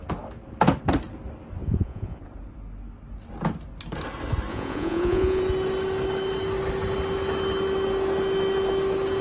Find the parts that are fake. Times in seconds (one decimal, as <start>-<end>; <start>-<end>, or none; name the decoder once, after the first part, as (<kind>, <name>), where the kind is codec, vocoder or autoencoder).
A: 1.6-2.2 (vocoder, Vocos); 4.5-5.4